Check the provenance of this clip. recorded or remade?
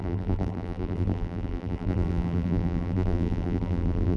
remade